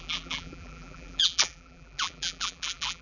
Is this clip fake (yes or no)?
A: yes